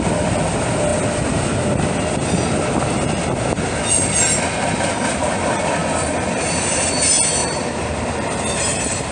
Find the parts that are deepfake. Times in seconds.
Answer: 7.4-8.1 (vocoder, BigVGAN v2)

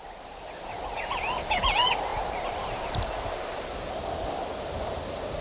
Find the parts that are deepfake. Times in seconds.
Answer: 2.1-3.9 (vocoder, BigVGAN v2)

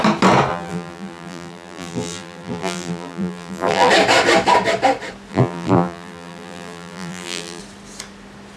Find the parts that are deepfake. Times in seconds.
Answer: 0.5-3.9 (vocoder, BigVGAN v2); 5.3-7.6